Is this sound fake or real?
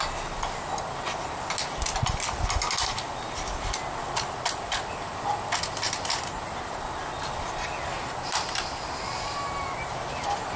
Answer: real